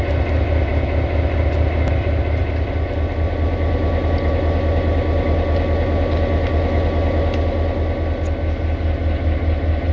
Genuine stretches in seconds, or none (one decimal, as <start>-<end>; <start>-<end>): 0.0-9.9